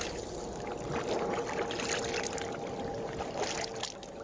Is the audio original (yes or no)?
yes